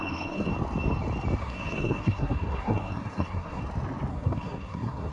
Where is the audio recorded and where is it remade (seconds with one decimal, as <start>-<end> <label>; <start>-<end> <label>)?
0.0-0.5 remade; 0.5-1.4 recorded; 1.4-3.6 remade; 3.6-4.1 recorded; 4.1-5.1 remade